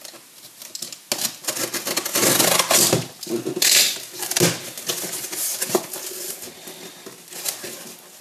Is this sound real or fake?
real